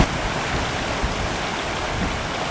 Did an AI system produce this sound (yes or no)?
no